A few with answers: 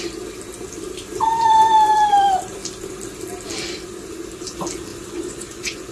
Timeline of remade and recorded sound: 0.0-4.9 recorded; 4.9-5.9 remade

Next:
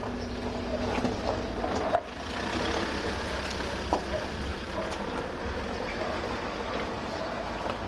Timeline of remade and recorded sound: 0.0-7.9 recorded

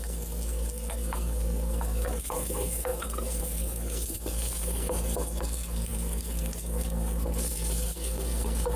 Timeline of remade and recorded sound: 0.0-8.8 remade

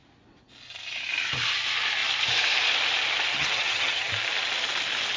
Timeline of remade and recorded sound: 0.0-3.3 recorded; 3.3-4.1 remade; 4.1-5.2 recorded